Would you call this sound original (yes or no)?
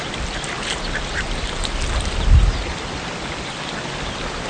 yes